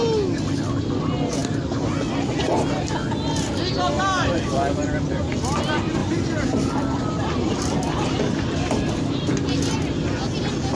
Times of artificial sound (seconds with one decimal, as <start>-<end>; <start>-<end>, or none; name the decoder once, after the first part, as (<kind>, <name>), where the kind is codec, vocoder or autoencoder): 4.5-5.1 (vocoder, BigVGAN v2); 6.0-9.2